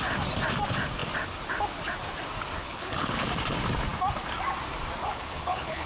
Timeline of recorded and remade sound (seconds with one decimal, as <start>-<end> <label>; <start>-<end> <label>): 0.0-2.6 recorded; 2.6-3.3 remade; 3.3-5.0 recorded; 5.0-5.9 remade